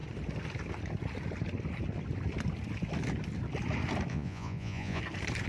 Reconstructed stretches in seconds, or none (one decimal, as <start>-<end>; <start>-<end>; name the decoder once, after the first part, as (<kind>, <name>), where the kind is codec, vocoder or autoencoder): 4.1-5.0 (vocoder, Vocos)